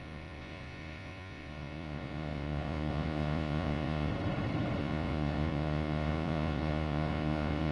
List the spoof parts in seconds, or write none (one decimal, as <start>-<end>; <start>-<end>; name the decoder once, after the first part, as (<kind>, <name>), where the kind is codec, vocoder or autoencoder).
0.0-4.1 (vocoder, Vocos); 4.8-7.7